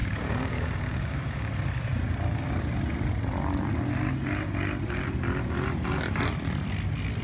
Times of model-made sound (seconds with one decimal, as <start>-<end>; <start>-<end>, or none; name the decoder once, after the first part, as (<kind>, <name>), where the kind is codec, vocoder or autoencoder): 0.0-1.5 (codec, DAC)